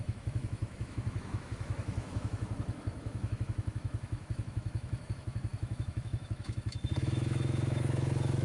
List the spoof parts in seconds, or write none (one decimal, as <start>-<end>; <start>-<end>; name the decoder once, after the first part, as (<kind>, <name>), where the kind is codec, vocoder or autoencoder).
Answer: 0.0-8.4 (autoencoder, DAC-VAE)